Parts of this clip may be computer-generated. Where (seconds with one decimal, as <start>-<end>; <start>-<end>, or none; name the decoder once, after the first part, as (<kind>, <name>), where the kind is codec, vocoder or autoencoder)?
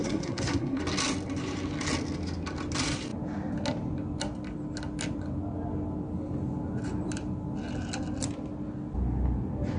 0.0-0.8 (codec, SNAC)